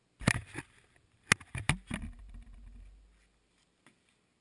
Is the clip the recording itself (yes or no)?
yes